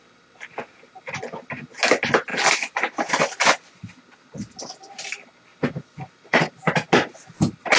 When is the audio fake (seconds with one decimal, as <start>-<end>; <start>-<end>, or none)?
2.3-3.1; 5.5-6.5